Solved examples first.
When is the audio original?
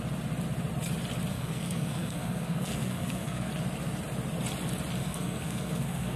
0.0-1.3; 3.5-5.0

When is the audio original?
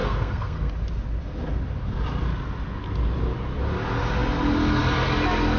0.7-5.6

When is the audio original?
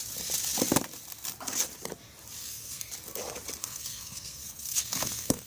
0.0-2.4; 2.9-3.6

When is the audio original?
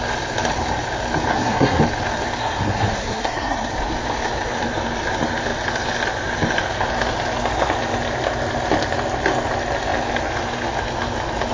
0.0-1.3; 1.8-2.4; 3.7-11.5